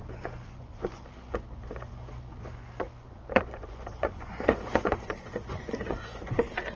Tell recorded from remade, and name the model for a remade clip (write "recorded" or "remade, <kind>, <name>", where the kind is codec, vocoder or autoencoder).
remade, vocoder, Vocos